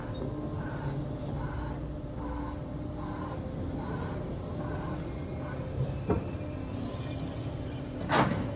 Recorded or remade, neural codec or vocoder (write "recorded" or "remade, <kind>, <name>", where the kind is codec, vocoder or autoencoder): recorded